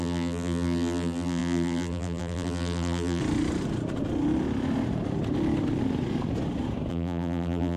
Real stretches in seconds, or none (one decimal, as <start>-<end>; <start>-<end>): 3.2-6.9